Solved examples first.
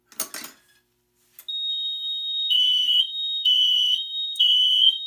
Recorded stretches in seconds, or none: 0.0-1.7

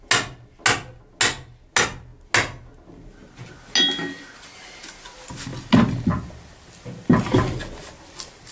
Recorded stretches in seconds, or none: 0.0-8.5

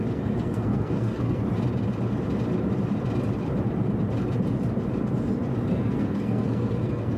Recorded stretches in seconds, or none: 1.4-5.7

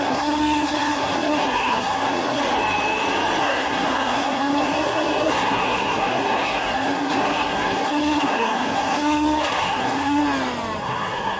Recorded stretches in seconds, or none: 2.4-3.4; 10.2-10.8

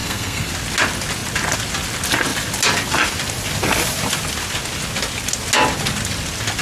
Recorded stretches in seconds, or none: 0.5-6.6